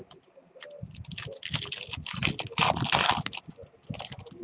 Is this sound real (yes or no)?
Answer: yes